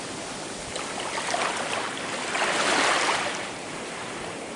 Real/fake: fake